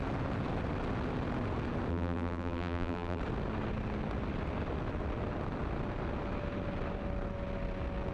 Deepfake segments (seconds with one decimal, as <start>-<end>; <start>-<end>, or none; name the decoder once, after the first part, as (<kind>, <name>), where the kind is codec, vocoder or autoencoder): 1.9-3.2 (vocoder, BigVGAN v2)